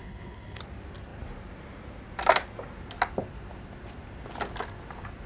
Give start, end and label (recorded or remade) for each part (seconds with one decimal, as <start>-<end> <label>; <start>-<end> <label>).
0.0-0.6 remade; 0.6-5.3 recorded